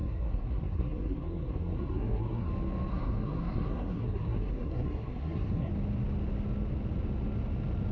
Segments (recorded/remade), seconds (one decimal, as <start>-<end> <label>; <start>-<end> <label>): 0.0-2.5 remade; 2.5-2.9 recorded; 2.9-5.7 remade; 5.7-7.9 recorded